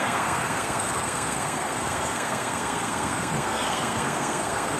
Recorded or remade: remade